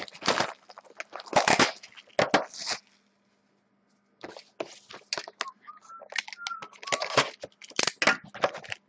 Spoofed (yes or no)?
no